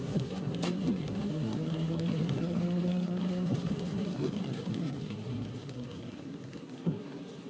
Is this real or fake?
fake